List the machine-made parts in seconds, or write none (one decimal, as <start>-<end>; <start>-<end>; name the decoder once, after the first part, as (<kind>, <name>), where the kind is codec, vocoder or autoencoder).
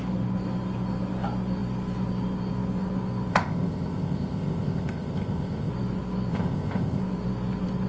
3.3-5.7 (codec, ZipCodec); 6.3-7.0